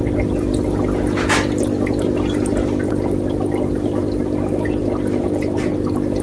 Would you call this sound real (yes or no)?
yes